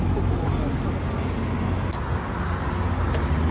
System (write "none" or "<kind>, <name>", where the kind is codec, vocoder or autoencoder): none